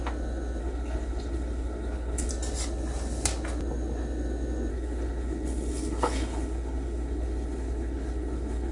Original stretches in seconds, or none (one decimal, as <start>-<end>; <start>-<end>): 0.0-0.6; 2.3-4.7